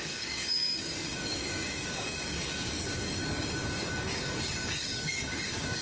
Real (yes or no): no